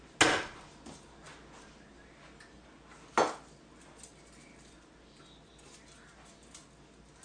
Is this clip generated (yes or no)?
no